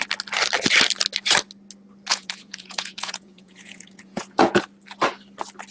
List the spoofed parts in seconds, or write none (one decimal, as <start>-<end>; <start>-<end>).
2.1-4.6